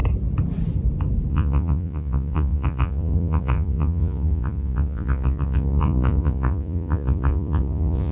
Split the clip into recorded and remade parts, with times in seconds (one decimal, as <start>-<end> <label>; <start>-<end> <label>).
0.0-1.3 recorded; 1.3-8.1 remade

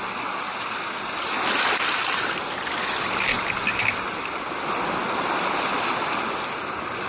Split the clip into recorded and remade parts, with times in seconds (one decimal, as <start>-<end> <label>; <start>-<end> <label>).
0.0-7.1 recorded

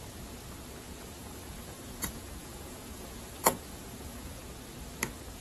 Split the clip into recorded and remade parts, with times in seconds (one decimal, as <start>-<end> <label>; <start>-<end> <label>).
0.0-1.2 recorded; 1.2-4.4 remade; 4.4-5.4 recorded

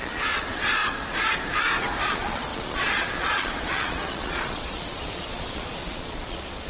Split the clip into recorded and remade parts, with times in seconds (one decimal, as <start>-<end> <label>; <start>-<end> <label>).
0.0-0.8 remade; 0.8-2.1 recorded; 2.1-6.7 remade

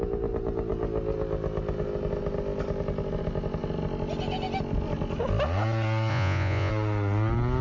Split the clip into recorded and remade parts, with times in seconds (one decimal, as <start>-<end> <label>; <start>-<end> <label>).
0.0-6.1 recorded; 6.1-6.7 remade; 6.7-7.6 recorded

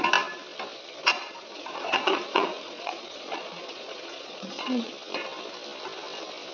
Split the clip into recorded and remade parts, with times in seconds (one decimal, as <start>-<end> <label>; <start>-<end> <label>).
0.0-1.0 recorded; 1.0-4.9 remade; 4.9-6.5 recorded

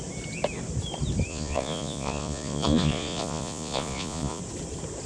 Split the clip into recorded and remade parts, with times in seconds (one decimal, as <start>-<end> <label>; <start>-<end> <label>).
0.0-1.3 recorded; 1.3-4.4 remade; 4.4-5.1 recorded

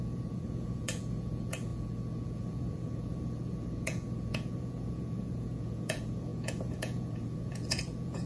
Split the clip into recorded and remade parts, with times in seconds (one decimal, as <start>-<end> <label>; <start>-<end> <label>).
0.0-8.3 remade